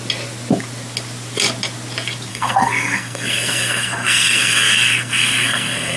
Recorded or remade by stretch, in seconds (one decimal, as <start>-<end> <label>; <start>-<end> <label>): 0.0-2.3 recorded; 2.3-6.0 remade